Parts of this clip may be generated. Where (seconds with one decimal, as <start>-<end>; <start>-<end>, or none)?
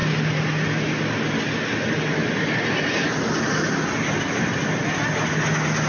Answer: none